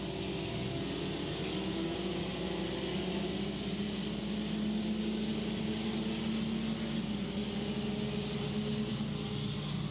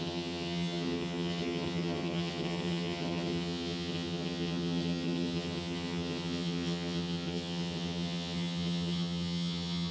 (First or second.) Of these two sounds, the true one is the first